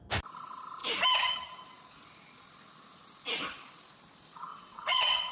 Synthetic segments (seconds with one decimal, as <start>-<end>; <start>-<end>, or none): 4.5-5.3